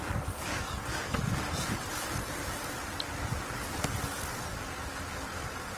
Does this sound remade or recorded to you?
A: recorded